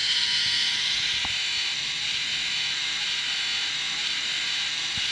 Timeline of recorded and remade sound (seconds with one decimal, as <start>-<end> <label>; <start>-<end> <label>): 0.0-5.1 recorded